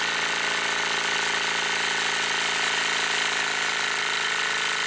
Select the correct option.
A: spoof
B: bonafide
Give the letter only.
B